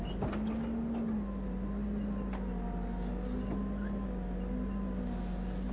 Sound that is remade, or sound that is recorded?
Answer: recorded